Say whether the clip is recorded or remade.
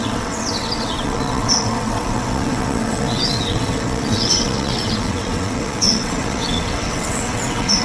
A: remade